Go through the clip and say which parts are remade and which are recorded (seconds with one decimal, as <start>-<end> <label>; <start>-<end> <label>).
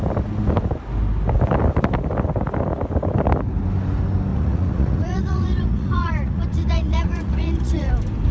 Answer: 0.0-4.3 recorded; 4.3-7.9 remade; 7.9-8.3 recorded